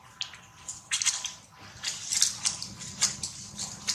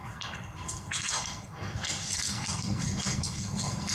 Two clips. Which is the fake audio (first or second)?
second